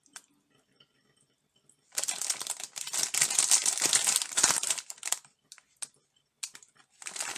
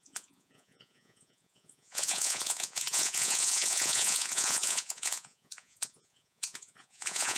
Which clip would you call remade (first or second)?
second